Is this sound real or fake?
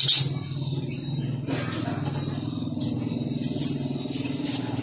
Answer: real